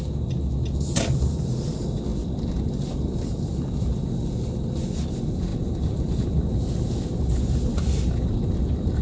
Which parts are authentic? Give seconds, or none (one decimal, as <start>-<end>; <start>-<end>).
0.0-9.0